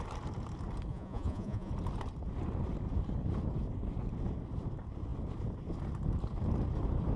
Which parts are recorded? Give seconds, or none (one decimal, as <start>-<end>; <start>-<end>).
0.0-0.9; 1.7-7.2